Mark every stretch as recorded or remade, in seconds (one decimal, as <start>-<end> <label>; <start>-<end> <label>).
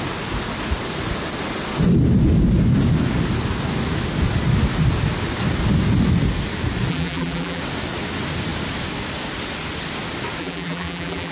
0.0-6.9 recorded; 6.9-7.6 remade; 7.6-10.4 recorded; 10.4-11.3 remade